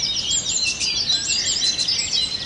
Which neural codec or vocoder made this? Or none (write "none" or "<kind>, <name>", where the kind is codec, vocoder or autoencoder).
none